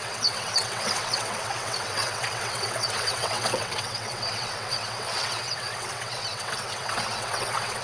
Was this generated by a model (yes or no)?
yes